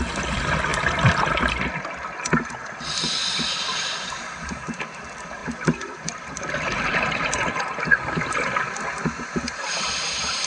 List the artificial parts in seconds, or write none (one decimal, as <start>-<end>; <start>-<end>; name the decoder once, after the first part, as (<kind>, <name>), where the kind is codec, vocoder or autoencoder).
5.4-6.4 (vocoder, BigVGAN v2)